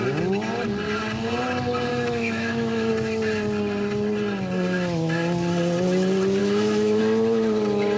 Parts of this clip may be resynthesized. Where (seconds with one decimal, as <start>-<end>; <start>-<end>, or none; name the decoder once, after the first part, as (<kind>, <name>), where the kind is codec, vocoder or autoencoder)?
1.9-2.9 (autoencoder, DAC-VAE); 6.4-7.0